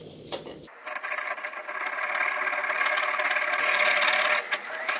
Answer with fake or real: real